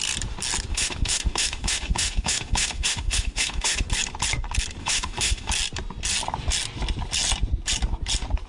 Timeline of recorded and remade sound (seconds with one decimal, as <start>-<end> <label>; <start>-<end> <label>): 0.0-0.7 recorded; 0.7-3.8 remade; 3.8-4.8 recorded; 4.8-5.5 remade; 5.5-8.5 recorded